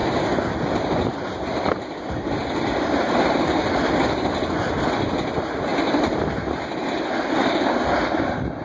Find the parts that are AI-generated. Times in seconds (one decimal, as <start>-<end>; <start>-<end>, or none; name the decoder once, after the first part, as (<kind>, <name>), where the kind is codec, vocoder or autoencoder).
none